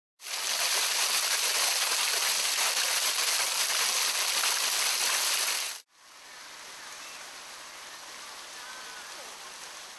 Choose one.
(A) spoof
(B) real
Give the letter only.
B